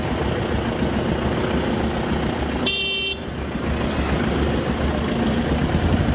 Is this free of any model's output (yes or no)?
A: yes